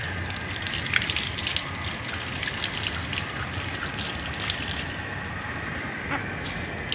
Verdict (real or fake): real